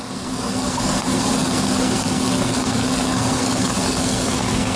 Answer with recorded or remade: remade